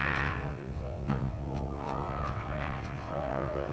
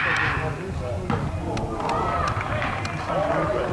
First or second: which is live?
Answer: second